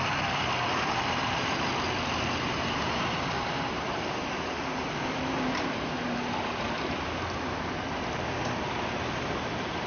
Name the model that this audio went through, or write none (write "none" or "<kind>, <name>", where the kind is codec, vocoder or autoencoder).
vocoder, BigVGAN v2